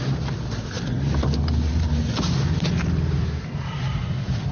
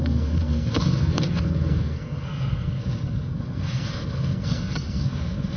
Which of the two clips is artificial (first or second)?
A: second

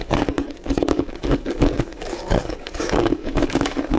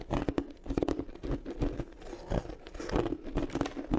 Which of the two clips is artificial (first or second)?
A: first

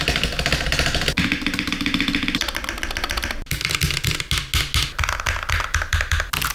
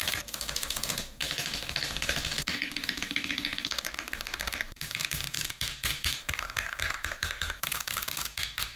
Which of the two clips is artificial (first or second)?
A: second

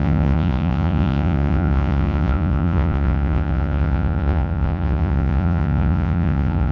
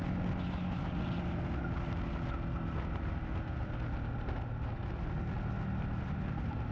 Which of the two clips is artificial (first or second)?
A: first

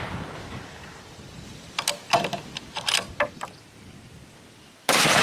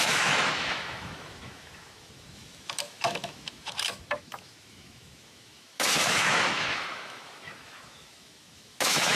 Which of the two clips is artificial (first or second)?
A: second